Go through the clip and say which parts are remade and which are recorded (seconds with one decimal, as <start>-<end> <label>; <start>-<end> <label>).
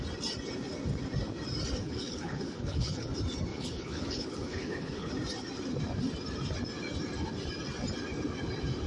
0.0-1.8 recorded; 1.8-3.1 remade; 3.1-3.5 recorded; 3.5-5.1 remade; 5.1-8.9 recorded